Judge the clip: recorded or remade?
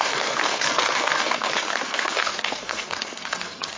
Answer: remade